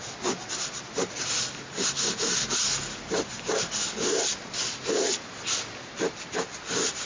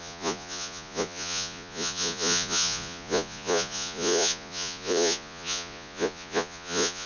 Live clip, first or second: first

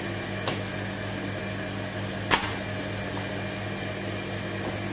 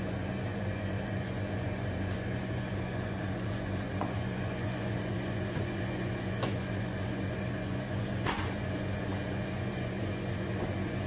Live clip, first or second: first